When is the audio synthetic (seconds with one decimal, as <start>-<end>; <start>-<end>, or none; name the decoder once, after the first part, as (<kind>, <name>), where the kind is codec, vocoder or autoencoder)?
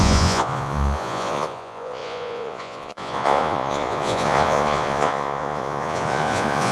0.0-6.7 (vocoder, Vocos)